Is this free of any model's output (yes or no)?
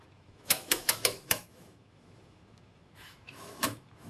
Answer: no